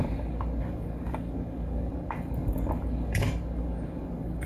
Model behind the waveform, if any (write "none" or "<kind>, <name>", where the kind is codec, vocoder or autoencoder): codec, DAC